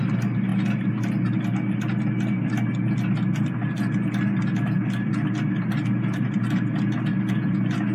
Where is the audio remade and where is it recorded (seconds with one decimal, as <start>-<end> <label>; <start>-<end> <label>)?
0.0-7.9 recorded